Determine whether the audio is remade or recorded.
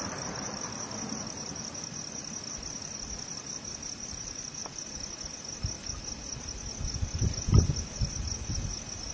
recorded